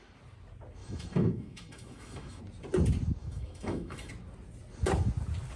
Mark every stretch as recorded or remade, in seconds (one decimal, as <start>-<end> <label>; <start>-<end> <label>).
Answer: 0.0-0.8 recorded; 0.8-2.4 remade; 2.4-3.2 recorded; 3.2-4.1 remade; 4.1-5.6 recorded